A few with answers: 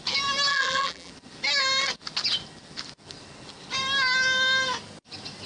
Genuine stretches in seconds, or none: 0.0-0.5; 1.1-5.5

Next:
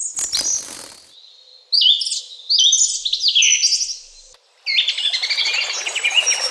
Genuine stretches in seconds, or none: 0.0-6.5

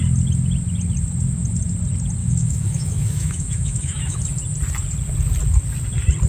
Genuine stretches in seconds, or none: 0.0-2.2; 4.2-6.3